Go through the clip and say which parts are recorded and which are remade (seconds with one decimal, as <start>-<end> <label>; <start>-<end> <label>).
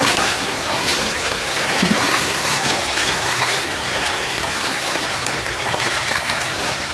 0.0-6.9 remade